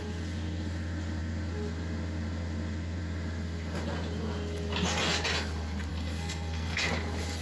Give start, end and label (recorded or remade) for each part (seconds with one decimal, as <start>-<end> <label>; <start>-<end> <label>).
0.0-5.9 recorded; 5.9-6.9 remade; 6.9-7.4 recorded